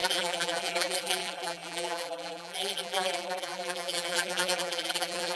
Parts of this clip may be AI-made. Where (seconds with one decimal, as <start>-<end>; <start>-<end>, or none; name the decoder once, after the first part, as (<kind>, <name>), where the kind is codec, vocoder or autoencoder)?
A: 0.0-5.4 (vocoder, BigVGAN v2)